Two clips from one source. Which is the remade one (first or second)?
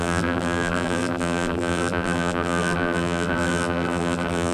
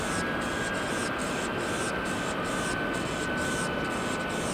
first